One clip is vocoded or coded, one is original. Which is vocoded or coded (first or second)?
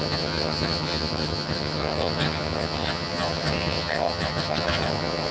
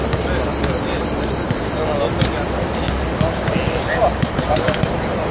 first